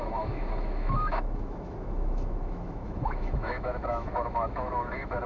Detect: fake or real fake